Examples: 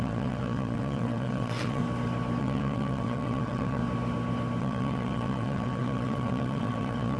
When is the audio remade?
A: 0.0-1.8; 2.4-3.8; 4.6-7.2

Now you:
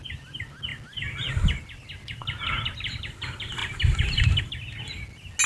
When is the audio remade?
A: none